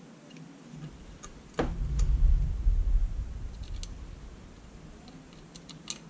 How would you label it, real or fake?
real